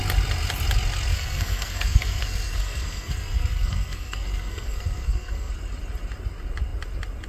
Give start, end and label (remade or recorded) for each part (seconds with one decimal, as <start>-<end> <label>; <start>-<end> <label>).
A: 0.0-1.1 recorded; 1.1-5.5 remade; 5.5-7.3 recorded